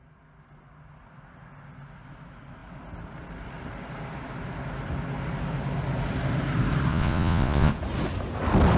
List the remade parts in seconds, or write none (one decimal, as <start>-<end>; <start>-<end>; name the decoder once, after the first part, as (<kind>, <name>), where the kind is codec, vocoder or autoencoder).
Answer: 6.9-7.7 (vocoder, Vocos)